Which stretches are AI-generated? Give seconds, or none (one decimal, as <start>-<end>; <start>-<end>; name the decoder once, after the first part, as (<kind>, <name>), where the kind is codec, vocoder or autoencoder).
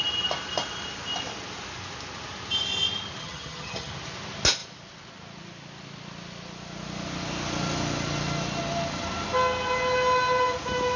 3.2-3.9 (vocoder, HiFi-GAN)